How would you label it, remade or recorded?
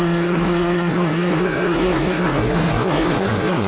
remade